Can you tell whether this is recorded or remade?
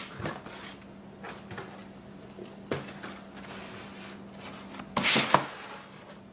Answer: recorded